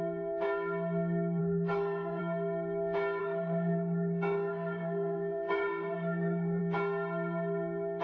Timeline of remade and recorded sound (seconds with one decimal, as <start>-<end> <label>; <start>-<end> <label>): 0.0-1.4 recorded; 1.4-2.2 remade; 2.2-3.2 recorded; 3.2-6.6 remade; 6.6-8.0 recorded